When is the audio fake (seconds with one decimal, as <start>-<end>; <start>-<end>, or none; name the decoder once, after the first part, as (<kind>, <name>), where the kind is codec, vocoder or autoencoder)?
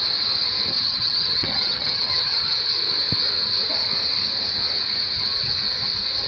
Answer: 0.7-2.6 (vocoder, HiFi-GAN)